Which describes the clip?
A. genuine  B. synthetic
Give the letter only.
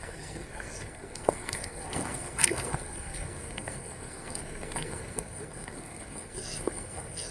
B